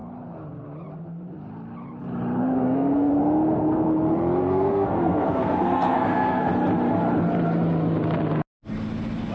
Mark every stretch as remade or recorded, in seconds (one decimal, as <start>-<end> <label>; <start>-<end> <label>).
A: 0.0-2.4 recorded; 2.4-3.1 remade; 3.1-4.4 recorded; 4.4-6.5 remade; 6.5-9.3 recorded